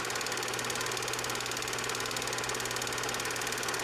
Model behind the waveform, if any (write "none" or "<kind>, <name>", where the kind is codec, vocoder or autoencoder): none